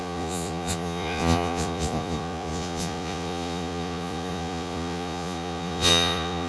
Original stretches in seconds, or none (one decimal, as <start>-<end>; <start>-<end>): none